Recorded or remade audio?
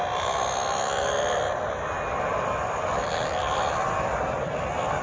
recorded